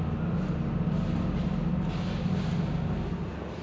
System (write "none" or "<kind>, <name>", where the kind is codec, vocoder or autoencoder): none